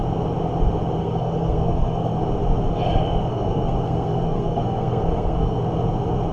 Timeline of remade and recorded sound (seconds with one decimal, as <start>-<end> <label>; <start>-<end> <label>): 0.0-1.0 recorded; 1.0-2.2 remade; 2.2-3.3 recorded; 3.3-5.6 remade; 5.6-6.3 recorded